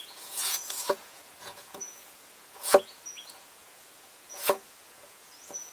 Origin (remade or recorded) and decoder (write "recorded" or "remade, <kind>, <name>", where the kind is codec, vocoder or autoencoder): remade, vocoder, Vocos